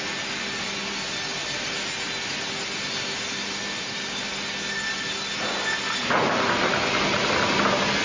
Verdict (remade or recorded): recorded